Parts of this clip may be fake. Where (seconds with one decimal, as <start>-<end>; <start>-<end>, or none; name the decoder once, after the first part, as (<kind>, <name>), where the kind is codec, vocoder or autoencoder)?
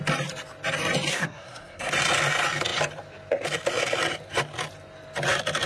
1.1-1.9 (codec, SNAC)